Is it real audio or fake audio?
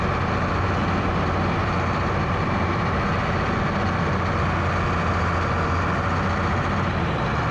real